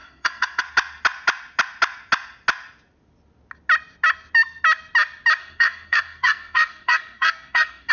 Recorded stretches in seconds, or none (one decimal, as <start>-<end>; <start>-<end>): 0.6-5.4